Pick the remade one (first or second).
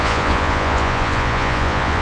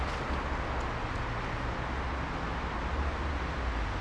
first